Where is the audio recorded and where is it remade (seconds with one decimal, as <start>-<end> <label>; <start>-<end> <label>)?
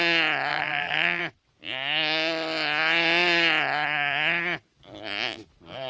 0.0-0.5 recorded; 0.5-1.2 remade; 1.2-5.9 recorded